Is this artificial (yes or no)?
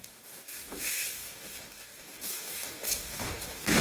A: yes